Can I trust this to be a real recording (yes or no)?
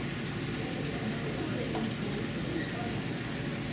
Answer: yes